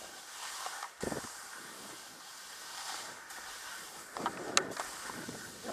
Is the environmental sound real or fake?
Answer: real